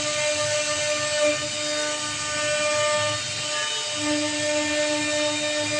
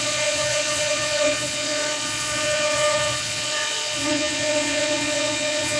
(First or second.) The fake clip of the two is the second